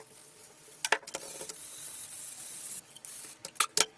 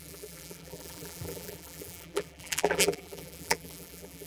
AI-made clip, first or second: second